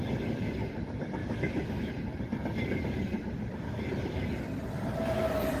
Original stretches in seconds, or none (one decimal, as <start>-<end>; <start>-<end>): 0.0-1.2; 1.9-5.6